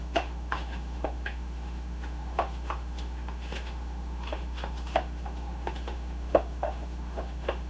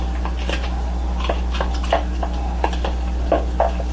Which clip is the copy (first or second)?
first